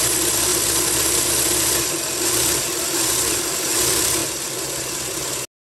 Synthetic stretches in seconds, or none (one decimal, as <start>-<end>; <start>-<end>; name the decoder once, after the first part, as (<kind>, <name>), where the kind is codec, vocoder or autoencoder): none